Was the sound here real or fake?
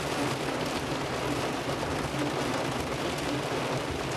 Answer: real